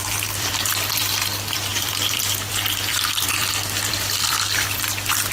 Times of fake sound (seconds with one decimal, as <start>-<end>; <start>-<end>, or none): 0.0-5.3

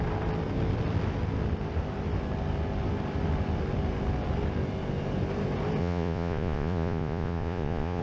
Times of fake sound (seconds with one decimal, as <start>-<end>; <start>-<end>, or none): 5.8-8.0

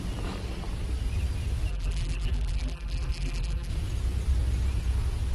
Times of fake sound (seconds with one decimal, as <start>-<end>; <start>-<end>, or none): 1.7-3.7

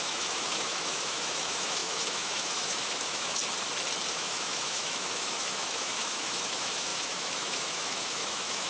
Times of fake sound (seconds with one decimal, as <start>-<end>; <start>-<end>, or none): 0.0-3.4; 4.1-8.7

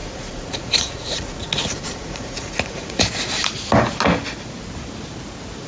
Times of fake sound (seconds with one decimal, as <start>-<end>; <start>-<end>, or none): 0.0-3.0

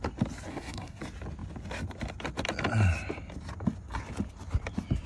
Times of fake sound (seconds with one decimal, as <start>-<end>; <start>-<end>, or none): 0.5-1.0

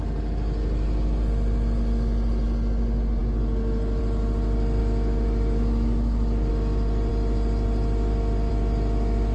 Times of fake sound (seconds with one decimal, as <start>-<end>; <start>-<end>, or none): 4.8-6.5